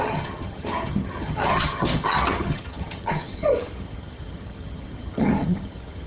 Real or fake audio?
fake